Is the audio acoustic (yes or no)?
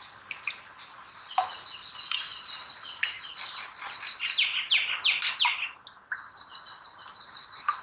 yes